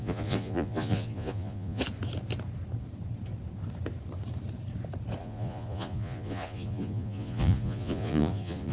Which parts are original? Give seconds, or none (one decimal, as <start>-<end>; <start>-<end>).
1.8-5.2